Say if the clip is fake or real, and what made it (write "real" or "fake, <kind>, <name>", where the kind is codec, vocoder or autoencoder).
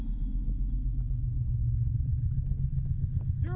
real